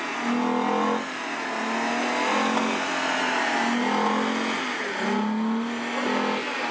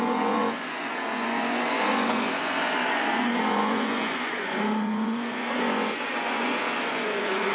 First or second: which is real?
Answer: first